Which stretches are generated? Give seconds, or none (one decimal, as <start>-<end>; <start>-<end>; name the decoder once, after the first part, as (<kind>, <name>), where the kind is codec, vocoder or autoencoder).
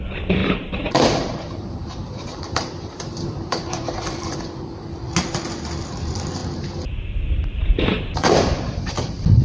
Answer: 0.4-4.6 (vocoder, BigVGAN v2); 6.4-8.9